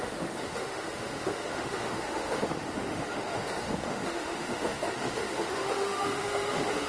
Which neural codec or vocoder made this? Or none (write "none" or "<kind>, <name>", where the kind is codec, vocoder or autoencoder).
autoencoder, DAC-VAE